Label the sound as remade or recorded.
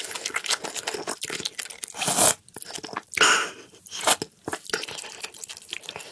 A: recorded